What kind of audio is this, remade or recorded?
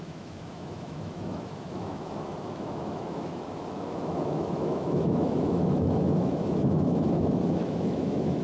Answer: remade